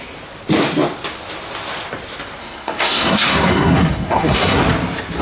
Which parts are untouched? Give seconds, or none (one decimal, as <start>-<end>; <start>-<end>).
0.0-2.4; 4.6-5.2